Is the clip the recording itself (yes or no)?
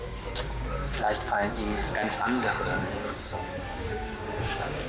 no